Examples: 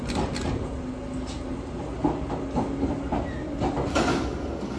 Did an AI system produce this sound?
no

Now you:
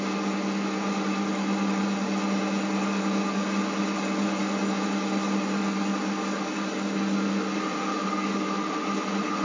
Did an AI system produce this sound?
no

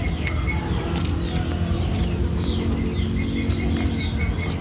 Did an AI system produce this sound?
no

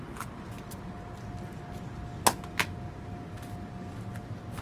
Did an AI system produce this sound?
no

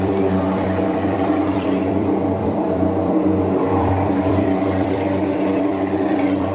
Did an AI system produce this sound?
yes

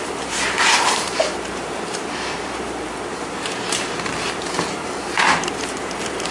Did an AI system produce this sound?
yes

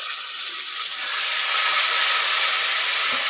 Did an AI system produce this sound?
yes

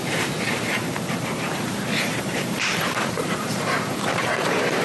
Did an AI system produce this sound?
yes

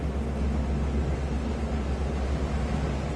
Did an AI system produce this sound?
no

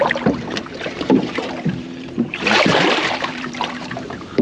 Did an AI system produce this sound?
yes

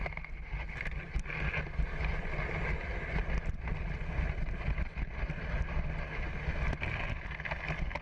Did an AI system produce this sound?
no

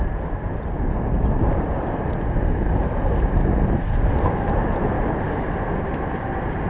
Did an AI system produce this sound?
no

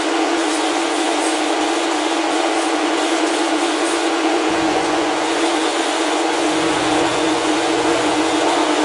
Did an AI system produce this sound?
yes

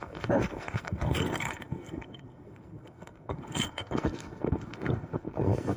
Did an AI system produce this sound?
yes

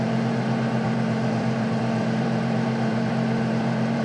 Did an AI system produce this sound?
yes